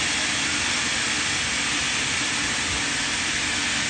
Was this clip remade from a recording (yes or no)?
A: no